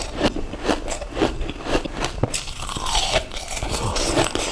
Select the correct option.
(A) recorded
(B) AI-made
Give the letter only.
A